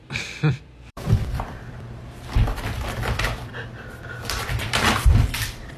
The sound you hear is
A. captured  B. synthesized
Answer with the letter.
B